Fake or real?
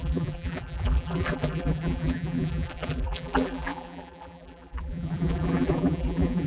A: fake